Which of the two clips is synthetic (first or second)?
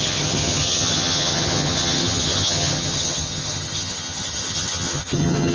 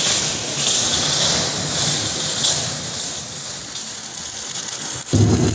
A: first